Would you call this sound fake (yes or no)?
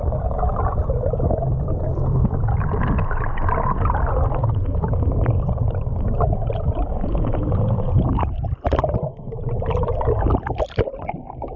yes